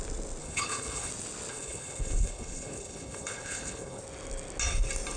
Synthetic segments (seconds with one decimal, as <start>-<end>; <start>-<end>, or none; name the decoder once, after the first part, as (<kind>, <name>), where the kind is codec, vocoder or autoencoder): 0.4-1.1 (codec, HILCodec); 1.5-4.0